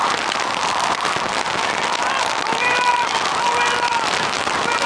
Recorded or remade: remade